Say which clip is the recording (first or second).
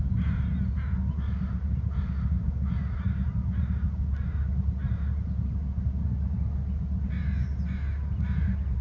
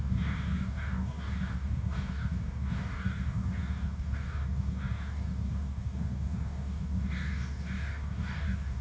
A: first